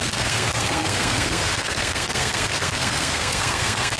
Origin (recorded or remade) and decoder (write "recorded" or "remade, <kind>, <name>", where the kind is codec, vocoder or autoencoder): remade, codec, SNAC